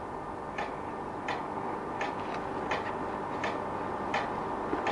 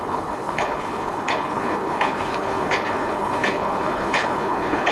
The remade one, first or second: second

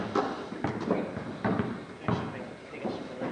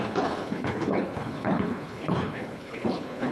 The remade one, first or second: second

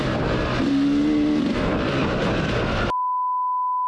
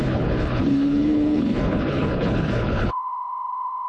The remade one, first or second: second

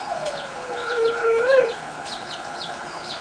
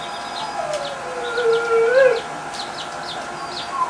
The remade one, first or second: first